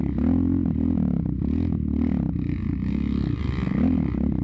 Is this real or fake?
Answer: real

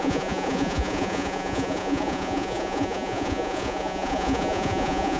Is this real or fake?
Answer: fake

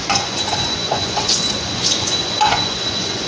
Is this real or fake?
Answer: fake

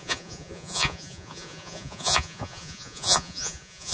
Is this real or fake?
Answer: fake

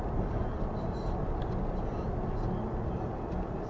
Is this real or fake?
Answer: real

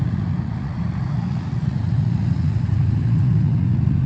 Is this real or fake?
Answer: fake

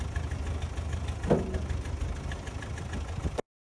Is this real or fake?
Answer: real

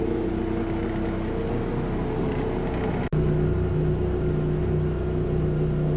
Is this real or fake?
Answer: real